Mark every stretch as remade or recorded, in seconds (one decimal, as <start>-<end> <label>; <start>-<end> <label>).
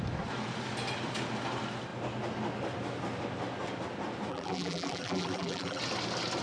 0.0-4.3 recorded; 4.3-5.8 remade; 5.8-6.4 recorded